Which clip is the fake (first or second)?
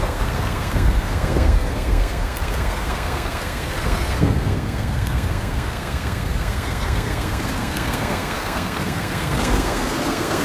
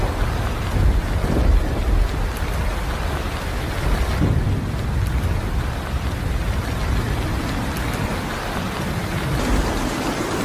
first